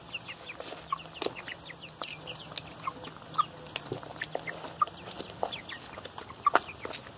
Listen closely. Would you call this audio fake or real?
real